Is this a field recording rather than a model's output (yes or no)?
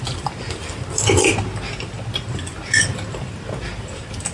yes